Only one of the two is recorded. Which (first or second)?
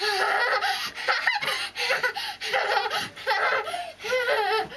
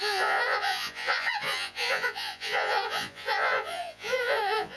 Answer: first